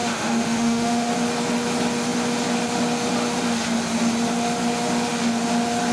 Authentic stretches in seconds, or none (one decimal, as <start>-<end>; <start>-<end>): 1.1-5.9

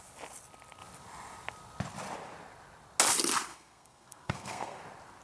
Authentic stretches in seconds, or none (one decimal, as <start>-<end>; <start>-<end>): 0.0-3.5; 4.8-5.2

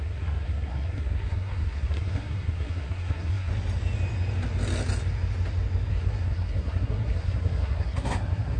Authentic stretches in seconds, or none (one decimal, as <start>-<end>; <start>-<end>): 3.5-5.9